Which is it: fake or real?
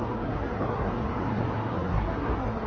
fake